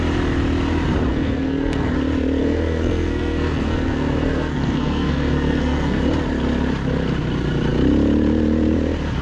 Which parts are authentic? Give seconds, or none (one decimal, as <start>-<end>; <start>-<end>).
0.0-1.1; 1.9-2.4; 6.0-9.2